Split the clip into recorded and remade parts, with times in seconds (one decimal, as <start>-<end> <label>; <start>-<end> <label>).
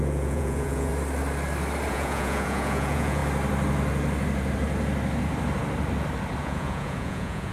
0.0-0.9 remade; 0.9-1.9 recorded; 1.9-3.2 remade; 3.2-6.4 recorded; 6.4-7.5 remade